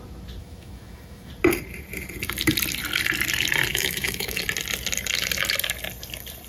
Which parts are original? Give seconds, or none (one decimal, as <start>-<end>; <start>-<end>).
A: 0.0-0.4; 1.3-3.7; 4.4-6.5